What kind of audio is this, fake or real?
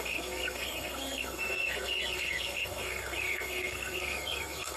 fake